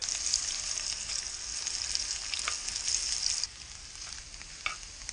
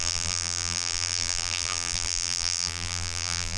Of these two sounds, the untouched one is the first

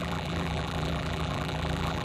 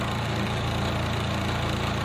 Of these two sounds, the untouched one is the second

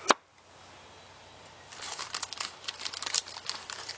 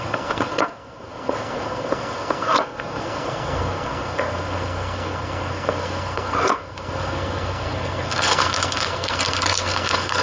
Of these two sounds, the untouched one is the first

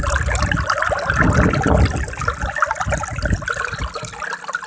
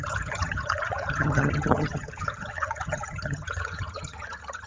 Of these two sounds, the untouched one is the first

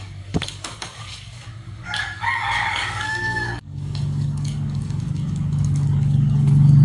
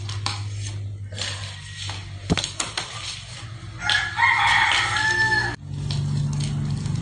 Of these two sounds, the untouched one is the second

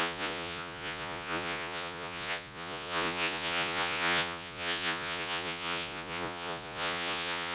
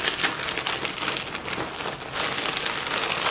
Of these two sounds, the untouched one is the second